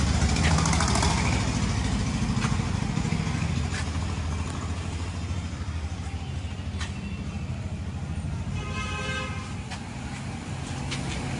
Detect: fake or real real